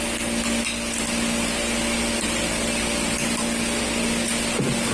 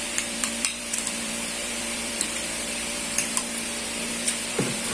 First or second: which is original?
first